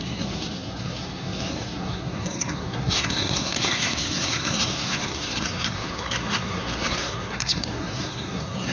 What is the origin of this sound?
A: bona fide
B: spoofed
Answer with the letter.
B